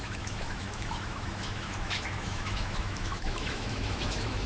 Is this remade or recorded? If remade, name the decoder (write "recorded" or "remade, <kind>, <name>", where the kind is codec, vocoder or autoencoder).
remade, autoencoder, DAC-VAE